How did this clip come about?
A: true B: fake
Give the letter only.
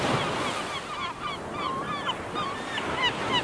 A